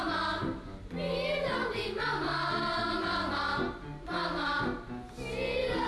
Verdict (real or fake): real